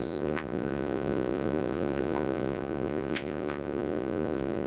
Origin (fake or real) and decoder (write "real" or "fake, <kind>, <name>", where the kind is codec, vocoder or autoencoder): fake, vocoder, Vocos